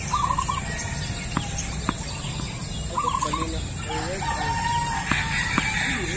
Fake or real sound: real